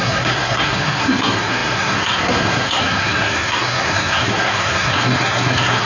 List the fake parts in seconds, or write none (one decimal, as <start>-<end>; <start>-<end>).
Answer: 0.0-5.9